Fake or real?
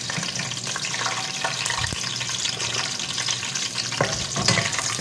real